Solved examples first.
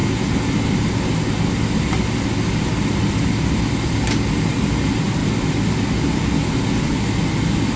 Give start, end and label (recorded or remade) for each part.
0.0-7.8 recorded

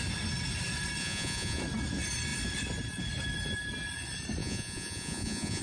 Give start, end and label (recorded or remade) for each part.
0.0-1.0 recorded; 1.0-1.6 remade; 1.6-4.4 recorded; 4.4-5.6 remade

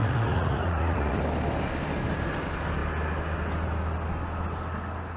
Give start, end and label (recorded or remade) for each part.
0.0-1.2 remade; 1.2-5.2 recorded

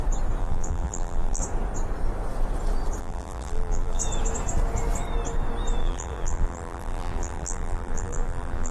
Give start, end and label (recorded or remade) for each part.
0.0-0.4 recorded; 0.4-1.4 remade; 1.4-3.0 recorded; 3.0-4.0 remade; 4.0-5.8 recorded; 5.8-8.7 remade